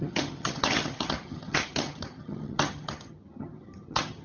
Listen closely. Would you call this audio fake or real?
fake